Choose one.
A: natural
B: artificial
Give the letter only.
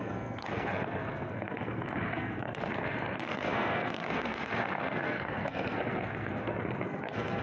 B